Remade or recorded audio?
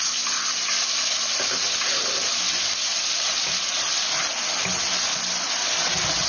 recorded